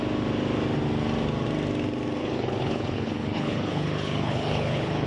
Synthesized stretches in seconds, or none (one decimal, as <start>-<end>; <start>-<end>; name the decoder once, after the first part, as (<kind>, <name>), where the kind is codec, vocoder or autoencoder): 2.2-5.1 (codec, HILCodec)